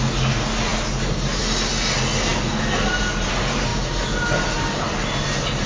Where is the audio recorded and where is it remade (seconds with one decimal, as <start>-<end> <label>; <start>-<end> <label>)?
0.0-5.7 recorded